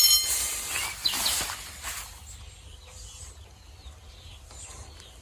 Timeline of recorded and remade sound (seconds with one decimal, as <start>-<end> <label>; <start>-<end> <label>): 0.0-5.2 recorded